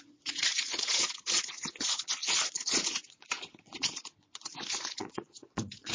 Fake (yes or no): yes